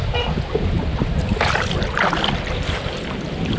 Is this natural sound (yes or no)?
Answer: yes